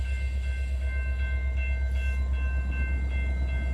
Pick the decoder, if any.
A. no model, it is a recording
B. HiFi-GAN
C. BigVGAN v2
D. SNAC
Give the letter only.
A